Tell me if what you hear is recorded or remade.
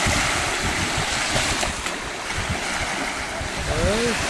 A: recorded